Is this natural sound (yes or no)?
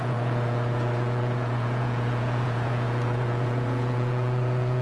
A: no